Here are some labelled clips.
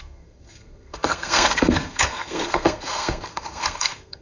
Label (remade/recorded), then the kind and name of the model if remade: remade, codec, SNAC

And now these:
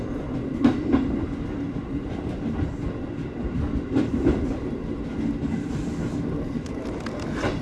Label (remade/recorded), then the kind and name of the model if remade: recorded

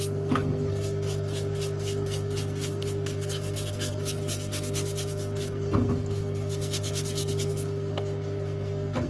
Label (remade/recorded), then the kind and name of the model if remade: remade, codec, SNAC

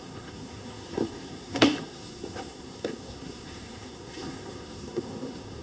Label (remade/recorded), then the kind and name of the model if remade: remade, codec, SNAC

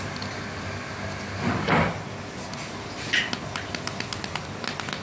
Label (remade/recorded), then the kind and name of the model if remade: recorded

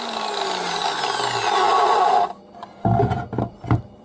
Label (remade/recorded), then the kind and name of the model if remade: recorded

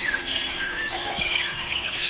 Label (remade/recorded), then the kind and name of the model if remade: remade, codec, SNAC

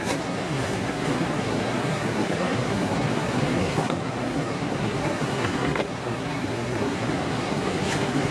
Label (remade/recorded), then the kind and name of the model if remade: remade, codec, SNAC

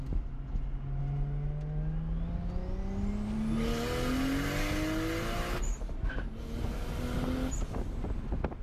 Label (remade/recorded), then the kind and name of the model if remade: recorded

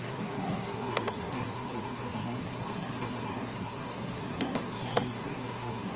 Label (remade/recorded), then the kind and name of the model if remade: remade, codec, SNAC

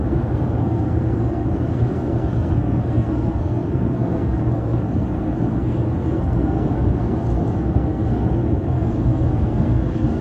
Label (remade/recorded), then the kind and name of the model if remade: remade, codec, SNAC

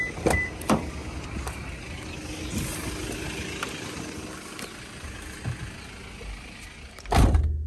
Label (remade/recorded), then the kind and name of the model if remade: recorded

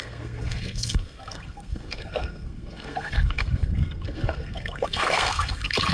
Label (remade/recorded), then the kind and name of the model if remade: remade, codec, SNAC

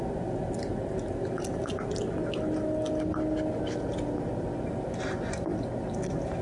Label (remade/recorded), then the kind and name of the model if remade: recorded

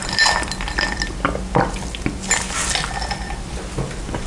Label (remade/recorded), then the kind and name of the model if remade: recorded